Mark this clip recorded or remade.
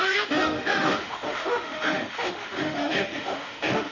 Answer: remade